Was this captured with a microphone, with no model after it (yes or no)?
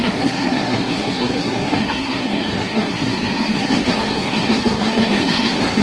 no